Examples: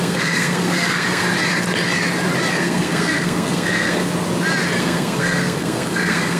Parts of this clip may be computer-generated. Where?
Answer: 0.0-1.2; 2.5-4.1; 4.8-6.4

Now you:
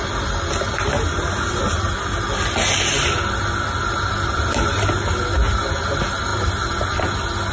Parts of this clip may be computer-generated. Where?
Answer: none

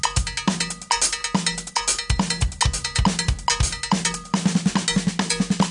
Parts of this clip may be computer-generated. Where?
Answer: none

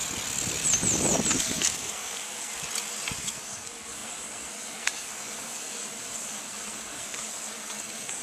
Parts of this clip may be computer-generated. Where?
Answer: 1.4-2.5; 3.2-8.2

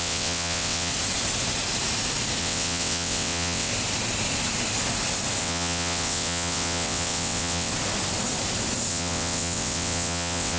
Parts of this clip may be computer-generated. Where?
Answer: 0.0-0.9; 2.4-3.7; 5.4-7.7; 8.9-10.6

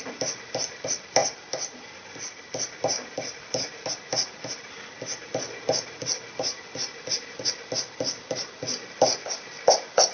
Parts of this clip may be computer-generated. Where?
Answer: 1.2-3.4

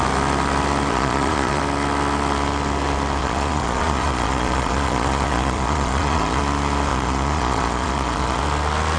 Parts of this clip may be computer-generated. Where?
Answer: 0.9-1.6; 3.2-6.4; 6.9-8.4

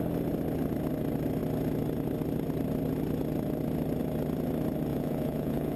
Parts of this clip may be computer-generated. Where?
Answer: 4.9-5.8